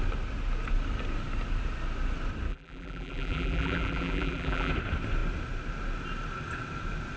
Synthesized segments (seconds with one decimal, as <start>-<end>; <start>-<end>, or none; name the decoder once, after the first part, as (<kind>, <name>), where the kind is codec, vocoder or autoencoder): 2.5-4.7 (vocoder, BigVGAN v2)